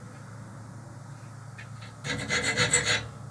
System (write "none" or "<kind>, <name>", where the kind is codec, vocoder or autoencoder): none